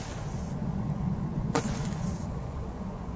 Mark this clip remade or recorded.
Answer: remade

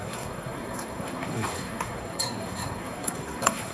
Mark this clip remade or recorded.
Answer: remade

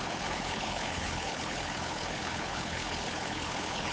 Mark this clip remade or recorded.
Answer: remade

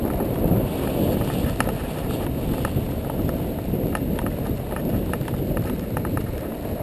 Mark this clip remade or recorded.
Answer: recorded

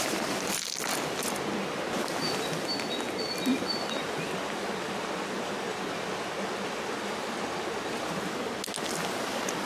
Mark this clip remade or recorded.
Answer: recorded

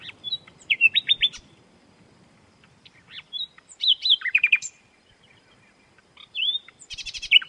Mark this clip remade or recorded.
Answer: remade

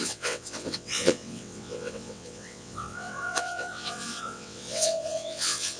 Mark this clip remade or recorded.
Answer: remade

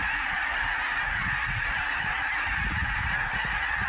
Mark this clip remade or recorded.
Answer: remade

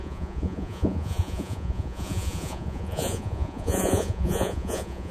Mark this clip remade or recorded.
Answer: remade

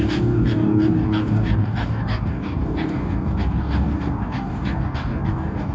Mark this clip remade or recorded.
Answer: remade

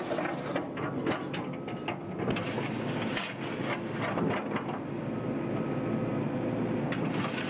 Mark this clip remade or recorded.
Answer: recorded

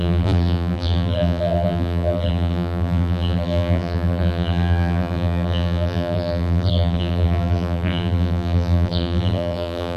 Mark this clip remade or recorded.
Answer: remade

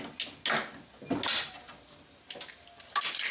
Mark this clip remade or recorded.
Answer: recorded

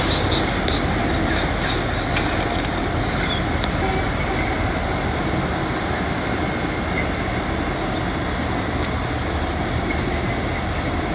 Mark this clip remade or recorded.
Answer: recorded